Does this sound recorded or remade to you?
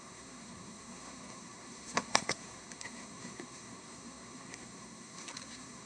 remade